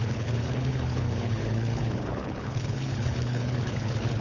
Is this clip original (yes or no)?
no